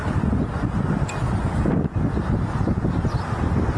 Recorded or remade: recorded